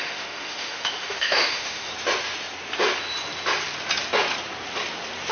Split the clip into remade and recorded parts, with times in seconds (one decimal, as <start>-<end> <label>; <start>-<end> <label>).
0.0-1.9 remade; 1.9-5.3 recorded